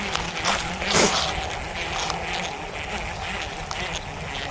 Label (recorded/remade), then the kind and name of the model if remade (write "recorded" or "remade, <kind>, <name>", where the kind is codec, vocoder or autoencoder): recorded